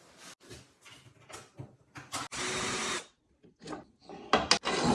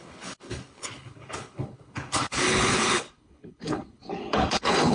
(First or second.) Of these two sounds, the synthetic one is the second